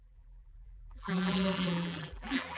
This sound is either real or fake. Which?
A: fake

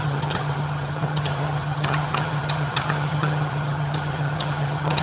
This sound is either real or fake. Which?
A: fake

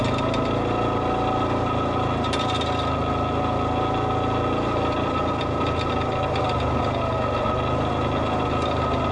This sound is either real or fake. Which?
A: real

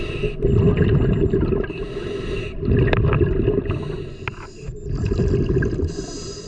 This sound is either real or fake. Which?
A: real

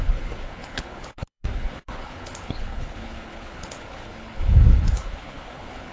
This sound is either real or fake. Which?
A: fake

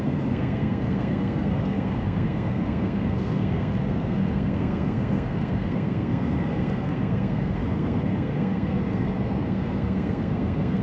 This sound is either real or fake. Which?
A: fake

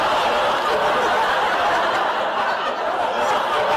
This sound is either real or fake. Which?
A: real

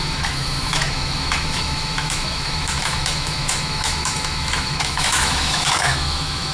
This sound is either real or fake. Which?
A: fake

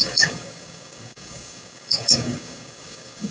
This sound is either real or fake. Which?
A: fake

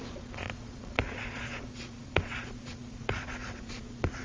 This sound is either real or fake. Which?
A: fake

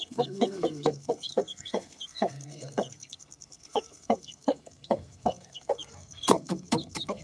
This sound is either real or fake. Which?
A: fake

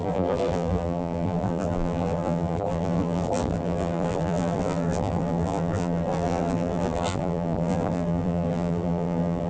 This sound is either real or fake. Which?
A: fake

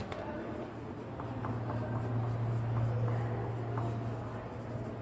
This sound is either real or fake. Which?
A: real